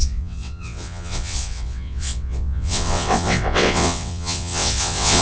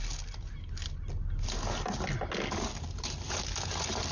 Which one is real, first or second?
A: second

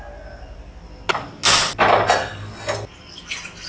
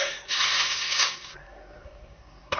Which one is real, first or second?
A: first